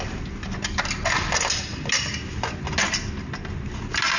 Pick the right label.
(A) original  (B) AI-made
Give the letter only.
A